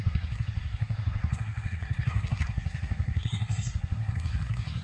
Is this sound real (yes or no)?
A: no